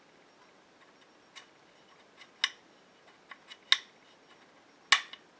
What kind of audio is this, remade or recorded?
recorded